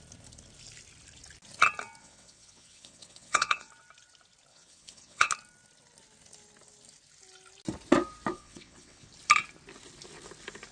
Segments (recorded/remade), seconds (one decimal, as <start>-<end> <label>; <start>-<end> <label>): 0.0-2.0 recorded; 2.0-3.7 remade; 3.7-4.5 recorded; 4.5-5.3 remade; 5.3-8.3 recorded; 8.3-9.1 remade; 9.1-10.7 recorded